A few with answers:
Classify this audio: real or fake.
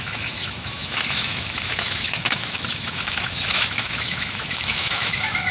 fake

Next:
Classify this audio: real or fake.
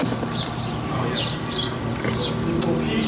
real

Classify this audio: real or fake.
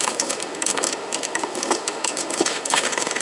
fake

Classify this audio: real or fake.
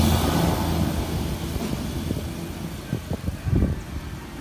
real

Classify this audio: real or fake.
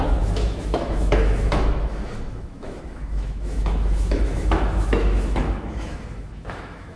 fake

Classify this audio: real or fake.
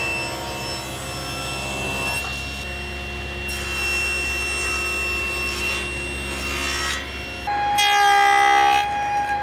real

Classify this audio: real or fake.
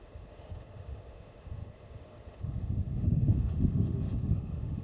fake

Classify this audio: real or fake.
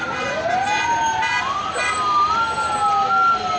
real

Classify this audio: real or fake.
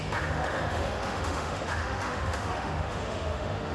fake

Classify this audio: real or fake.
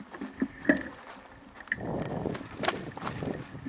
real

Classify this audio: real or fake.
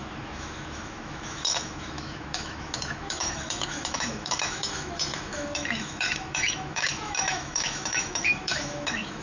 fake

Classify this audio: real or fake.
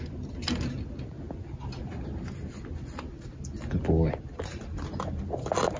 real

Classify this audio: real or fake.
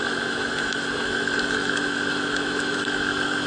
fake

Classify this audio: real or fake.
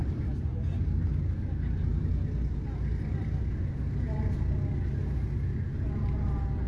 real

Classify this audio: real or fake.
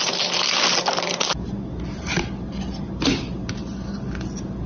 real